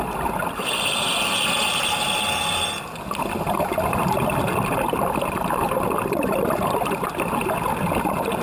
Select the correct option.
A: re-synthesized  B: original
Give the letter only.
B